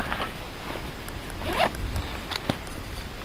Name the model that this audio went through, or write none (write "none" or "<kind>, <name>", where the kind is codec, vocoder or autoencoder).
none